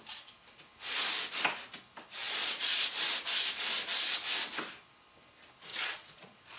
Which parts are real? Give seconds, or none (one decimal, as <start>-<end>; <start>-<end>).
0.0-2.2; 3.0-5.7